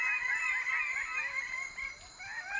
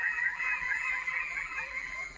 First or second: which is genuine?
first